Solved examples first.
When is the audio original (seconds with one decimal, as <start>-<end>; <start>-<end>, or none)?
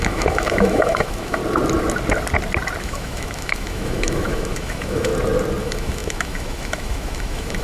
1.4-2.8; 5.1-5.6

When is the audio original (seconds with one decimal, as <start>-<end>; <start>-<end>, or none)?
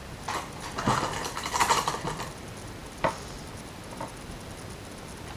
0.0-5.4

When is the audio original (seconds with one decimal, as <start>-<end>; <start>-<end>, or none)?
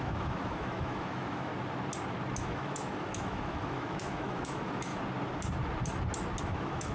1.5-2.4; 4.9-6.4